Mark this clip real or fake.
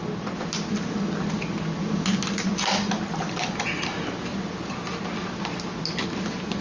real